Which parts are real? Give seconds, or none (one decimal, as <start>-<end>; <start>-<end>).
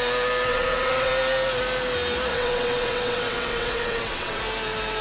0.0-0.5; 1.1-2.3; 4.4-5.0